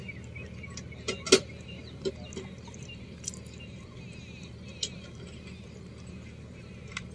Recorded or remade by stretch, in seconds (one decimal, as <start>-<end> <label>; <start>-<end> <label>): 0.0-7.1 recorded